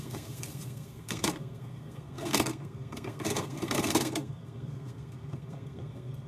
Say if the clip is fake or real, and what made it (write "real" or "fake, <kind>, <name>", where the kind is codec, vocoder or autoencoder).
fake, codec, SNAC